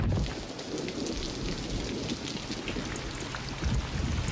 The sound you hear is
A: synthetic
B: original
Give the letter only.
B